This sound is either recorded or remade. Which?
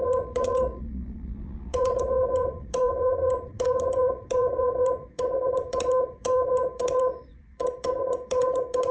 remade